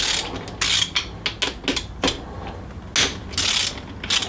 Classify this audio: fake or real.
real